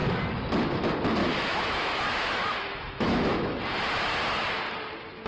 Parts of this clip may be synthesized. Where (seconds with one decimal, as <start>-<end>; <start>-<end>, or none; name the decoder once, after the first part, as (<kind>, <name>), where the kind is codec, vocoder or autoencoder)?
1.2-3.6 (autoencoder, DAC-VAE)